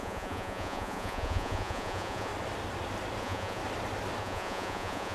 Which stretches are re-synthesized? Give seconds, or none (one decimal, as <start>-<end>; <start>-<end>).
0.0-2.3; 3.2-3.6; 4.2-5.1